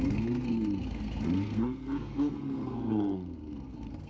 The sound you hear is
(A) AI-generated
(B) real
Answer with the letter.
A